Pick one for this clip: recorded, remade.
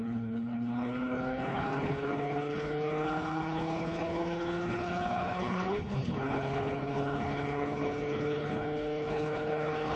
remade